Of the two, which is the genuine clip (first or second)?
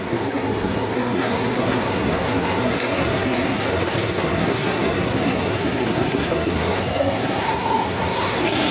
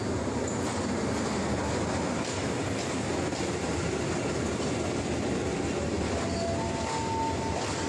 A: second